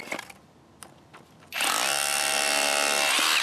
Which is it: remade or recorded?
recorded